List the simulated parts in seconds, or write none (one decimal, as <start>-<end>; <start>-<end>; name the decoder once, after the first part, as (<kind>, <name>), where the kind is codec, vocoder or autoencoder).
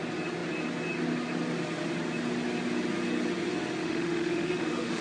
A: 3.8-5.0 (autoencoder, DAC-VAE)